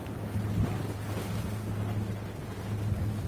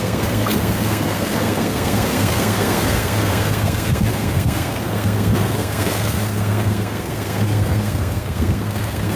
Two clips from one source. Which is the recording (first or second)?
first